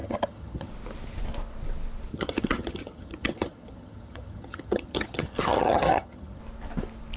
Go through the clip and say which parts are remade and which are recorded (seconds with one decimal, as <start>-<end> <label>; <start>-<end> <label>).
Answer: 0.0-0.7 remade; 0.7-2.1 recorded; 2.1-6.4 remade; 6.4-7.2 recorded